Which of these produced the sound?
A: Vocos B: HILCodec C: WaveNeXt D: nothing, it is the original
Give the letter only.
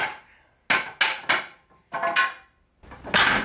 D